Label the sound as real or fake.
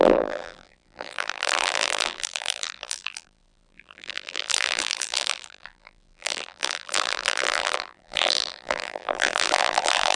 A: fake